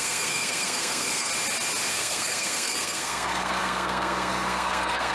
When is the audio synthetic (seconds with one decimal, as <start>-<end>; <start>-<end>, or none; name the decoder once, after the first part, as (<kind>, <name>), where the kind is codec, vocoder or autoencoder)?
0.0-1.3 (codec, SNAC); 1.9-5.1